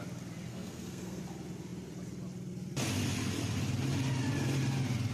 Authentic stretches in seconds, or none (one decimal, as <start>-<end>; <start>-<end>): 0.0-0.5; 1.2-5.1